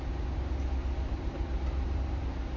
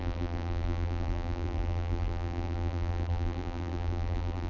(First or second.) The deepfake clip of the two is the second